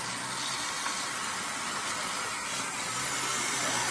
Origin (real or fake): real